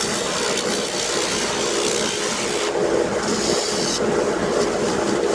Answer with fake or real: real